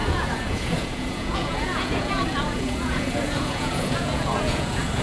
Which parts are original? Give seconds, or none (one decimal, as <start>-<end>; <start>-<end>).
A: none